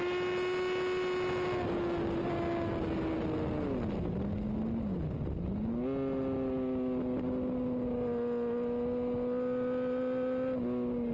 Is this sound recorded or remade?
recorded